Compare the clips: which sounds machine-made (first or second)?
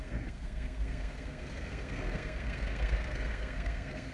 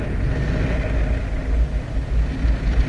first